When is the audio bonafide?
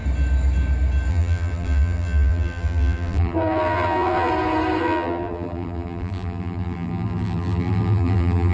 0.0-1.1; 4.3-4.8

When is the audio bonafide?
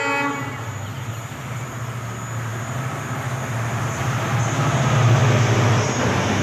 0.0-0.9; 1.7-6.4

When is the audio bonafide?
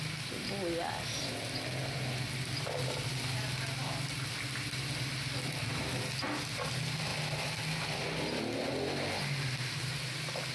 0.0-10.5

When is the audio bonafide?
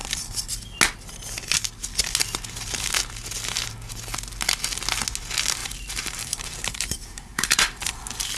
0.0-5.6; 7.9-8.4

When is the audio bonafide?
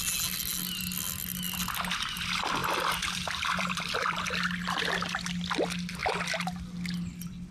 0.0-2.6; 4.8-7.5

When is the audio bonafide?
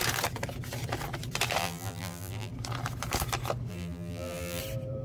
0.0-1.6; 2.5-3.7; 4.6-5.0